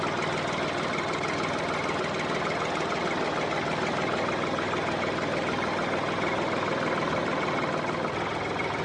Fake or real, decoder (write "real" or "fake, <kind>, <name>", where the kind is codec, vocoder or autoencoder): real